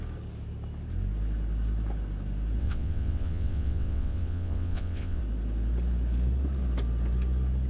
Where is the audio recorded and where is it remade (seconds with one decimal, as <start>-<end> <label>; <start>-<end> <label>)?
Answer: 0.0-2.6 recorded; 2.6-5.2 remade; 5.2-7.7 recorded